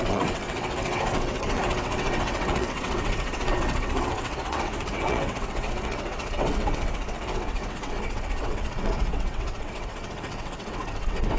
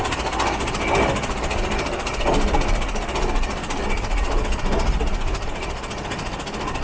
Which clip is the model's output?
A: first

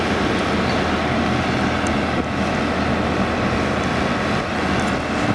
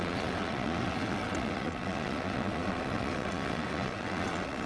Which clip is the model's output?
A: second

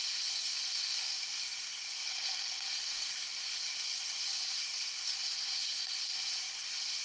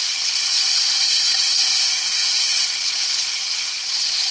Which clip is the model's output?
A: second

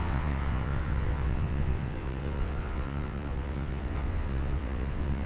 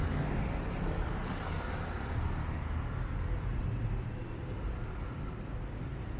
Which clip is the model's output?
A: first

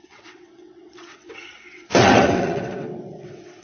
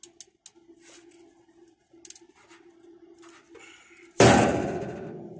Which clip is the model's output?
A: first